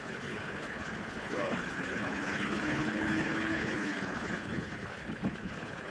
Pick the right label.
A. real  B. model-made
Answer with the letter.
B